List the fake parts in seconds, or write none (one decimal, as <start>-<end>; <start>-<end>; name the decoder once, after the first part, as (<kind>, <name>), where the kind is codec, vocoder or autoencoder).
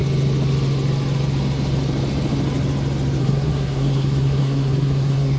3.2-5.4 (codec, SNAC)